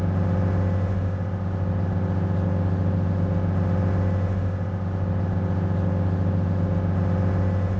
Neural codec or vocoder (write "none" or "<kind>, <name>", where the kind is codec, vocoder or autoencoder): none